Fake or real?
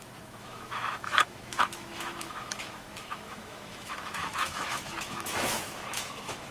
fake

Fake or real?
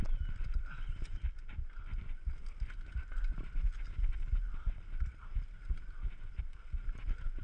real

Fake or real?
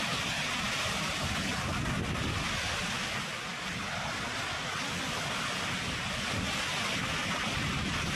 real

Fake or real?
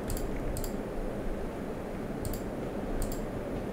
real